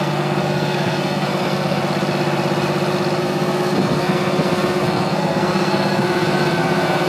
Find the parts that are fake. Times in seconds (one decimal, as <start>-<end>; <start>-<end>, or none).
0.0-1.8; 3.2-7.1